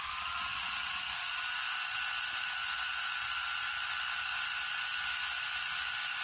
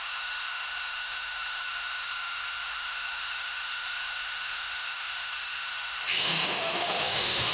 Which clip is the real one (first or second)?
first